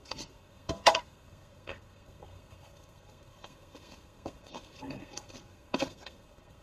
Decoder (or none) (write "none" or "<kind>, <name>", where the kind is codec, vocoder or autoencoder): codec, SNAC